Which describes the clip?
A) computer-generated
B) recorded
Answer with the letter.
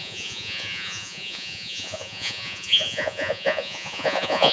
A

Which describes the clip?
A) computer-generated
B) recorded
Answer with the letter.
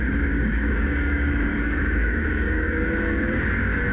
A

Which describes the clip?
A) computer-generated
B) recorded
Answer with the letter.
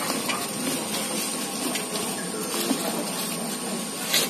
B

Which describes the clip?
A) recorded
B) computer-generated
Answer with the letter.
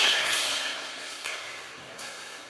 B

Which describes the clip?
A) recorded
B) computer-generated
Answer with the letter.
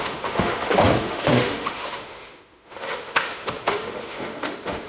B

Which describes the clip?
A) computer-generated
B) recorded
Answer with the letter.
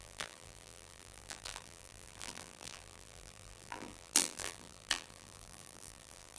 A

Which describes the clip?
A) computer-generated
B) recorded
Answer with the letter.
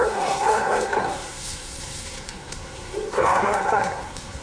A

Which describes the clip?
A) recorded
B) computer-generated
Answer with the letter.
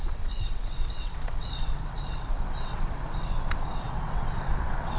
B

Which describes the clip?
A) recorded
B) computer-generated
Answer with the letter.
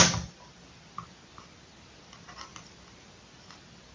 A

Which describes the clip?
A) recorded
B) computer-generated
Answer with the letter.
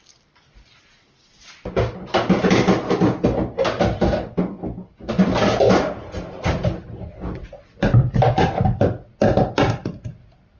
A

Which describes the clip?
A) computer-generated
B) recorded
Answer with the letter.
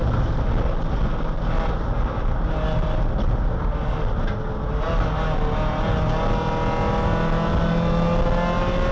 B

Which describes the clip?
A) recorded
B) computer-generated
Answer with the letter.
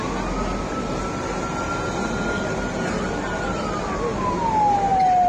A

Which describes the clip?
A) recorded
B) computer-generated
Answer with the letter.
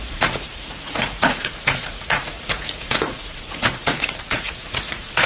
B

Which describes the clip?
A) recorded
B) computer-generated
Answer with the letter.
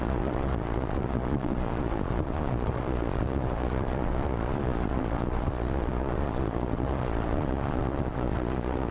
B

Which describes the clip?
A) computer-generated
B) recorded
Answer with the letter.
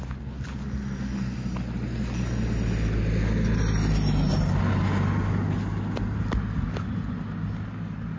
B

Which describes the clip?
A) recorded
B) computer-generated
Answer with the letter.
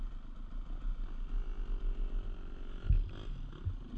A